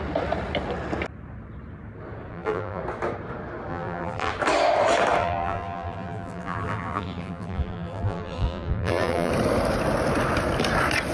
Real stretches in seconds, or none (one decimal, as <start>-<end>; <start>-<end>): 0.0-2.3; 2.8-3.7; 4.3-5.2; 9.3-11.1